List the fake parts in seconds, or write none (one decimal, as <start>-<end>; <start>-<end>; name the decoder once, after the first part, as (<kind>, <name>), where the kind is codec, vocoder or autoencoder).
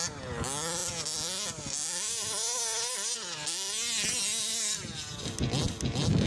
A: none